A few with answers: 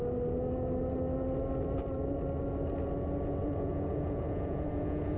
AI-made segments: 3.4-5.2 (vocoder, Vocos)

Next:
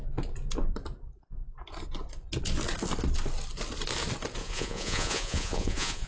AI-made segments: 4.4-6.1 (vocoder, Vocos)